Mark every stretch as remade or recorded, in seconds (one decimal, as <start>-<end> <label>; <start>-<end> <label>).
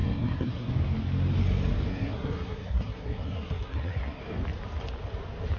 0.0-0.7 remade; 0.7-1.9 recorded; 1.9-4.2 remade; 4.2-5.6 recorded